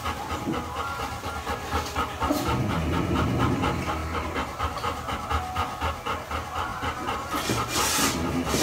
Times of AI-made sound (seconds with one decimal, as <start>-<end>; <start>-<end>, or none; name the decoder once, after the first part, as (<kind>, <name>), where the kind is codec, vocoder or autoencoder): none